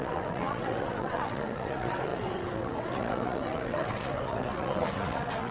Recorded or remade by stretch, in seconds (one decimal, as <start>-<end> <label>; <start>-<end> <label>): 0.0-5.5 remade